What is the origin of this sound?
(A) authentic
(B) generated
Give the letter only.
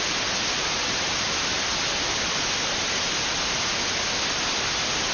A